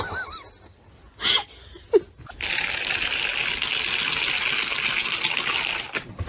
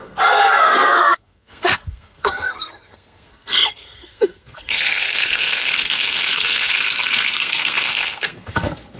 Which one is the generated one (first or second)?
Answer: second